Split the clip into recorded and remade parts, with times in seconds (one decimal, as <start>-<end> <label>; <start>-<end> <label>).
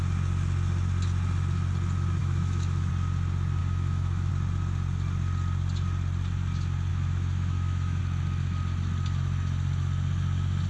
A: 0.0-2.2 recorded; 2.2-2.9 remade; 2.9-3.6 recorded; 3.6-4.3 remade; 4.3-6.9 recorded; 6.9-8.0 remade; 8.0-10.7 recorded